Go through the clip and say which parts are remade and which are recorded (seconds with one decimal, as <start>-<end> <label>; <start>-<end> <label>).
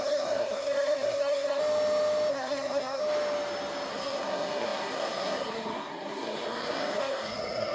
0.0-1.6 remade; 1.6-2.3 recorded; 2.3-3.0 remade; 3.0-3.9 recorded; 3.9-7.7 remade